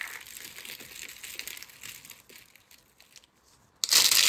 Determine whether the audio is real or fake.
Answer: real